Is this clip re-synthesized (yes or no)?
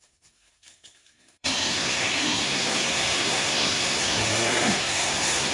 yes